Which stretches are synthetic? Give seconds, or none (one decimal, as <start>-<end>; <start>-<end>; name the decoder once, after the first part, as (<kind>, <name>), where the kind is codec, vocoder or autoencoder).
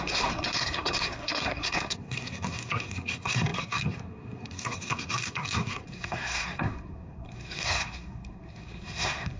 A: 0.0-9.4 (codec, SNAC)